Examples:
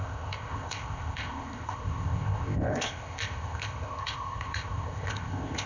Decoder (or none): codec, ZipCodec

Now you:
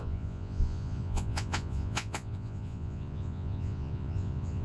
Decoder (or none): vocoder, Vocos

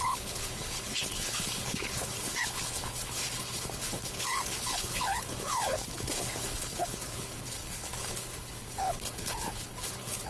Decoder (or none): codec, HILCodec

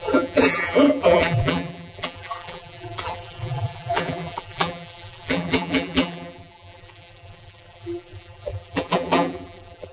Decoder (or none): vocoder, BigVGAN v2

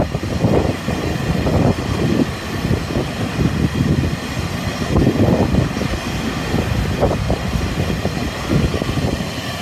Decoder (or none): none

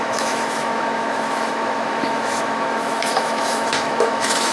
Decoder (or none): autoencoder, DAC-VAE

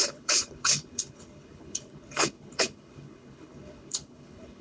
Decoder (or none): codec, HILCodec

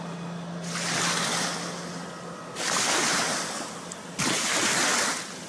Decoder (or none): none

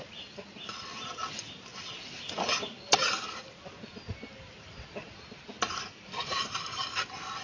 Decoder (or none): none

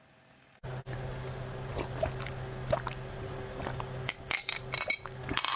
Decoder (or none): none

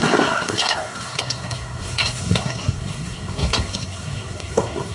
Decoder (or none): codec, SNAC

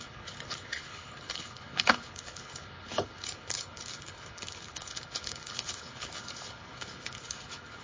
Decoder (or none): codec, HILCodec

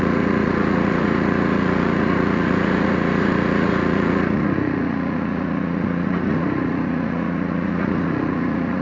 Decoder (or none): vocoder, Vocos